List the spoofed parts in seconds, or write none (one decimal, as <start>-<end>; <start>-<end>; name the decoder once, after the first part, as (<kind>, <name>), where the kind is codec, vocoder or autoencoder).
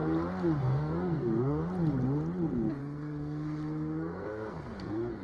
0.6-1.6 (codec, SNAC); 2.8-5.2